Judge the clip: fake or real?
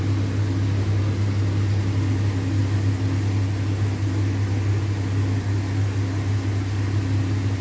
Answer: real